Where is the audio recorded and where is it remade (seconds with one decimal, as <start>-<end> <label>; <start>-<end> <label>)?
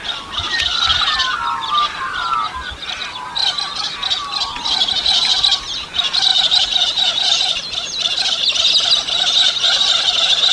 0.0-10.5 recorded